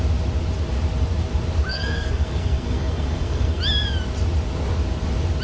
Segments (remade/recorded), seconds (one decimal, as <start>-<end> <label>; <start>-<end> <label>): 0.0-1.7 recorded; 1.7-3.6 remade; 3.6-5.4 recorded